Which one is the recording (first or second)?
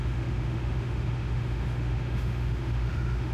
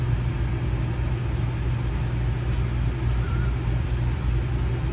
second